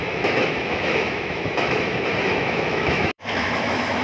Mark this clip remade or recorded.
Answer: remade